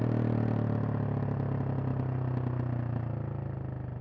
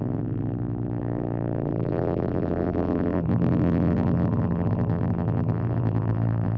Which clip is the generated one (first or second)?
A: second